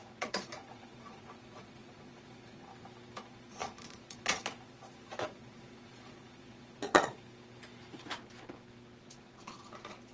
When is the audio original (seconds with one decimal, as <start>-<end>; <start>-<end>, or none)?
2.7-3.2; 7.1-9.0